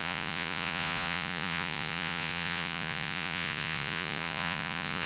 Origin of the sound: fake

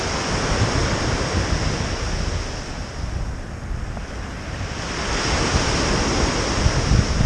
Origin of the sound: real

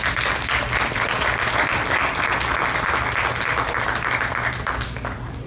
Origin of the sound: real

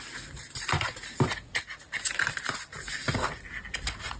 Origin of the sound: real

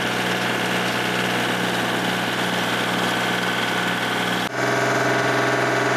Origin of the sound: real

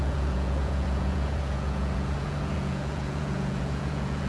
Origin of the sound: fake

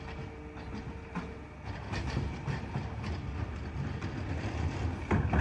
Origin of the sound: real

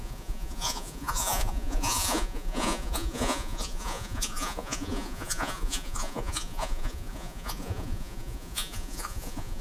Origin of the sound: fake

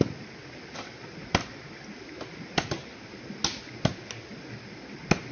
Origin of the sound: real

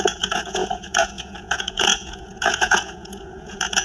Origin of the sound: fake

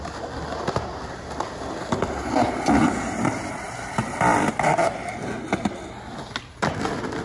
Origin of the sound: real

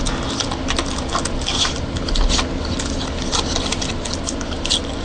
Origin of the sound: real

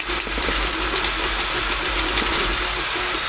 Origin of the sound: real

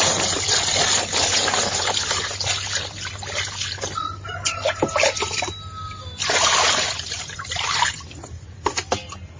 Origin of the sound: real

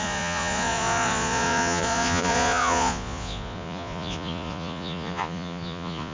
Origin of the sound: fake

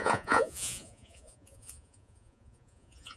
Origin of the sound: fake